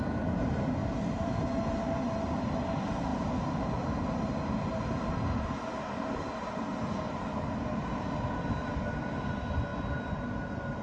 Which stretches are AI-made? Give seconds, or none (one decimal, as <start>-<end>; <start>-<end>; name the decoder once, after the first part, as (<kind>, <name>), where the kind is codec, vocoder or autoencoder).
0.8-1.4 (vocoder, BigVGAN v2)